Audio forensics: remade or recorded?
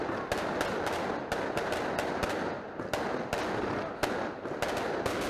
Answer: recorded